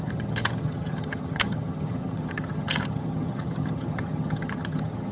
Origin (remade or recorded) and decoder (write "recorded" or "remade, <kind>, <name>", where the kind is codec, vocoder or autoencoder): remade, vocoder, HiFi-GAN